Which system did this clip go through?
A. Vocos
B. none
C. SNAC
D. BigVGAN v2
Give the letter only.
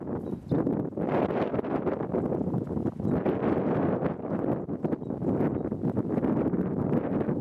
B